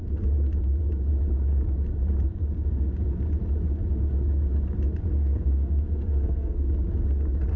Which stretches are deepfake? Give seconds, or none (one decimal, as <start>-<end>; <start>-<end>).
5.1-6.7